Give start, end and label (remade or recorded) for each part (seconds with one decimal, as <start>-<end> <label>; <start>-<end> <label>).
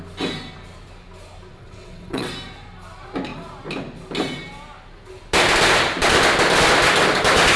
0.0-1.5 recorded; 1.5-2.3 remade; 2.3-7.6 recorded